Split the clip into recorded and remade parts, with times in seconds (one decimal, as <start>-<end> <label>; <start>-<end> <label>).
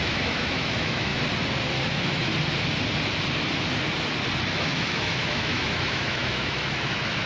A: 0.0-1.1 remade; 1.1-1.9 recorded; 1.9-2.3 remade; 2.3-4.5 recorded; 4.5-7.3 remade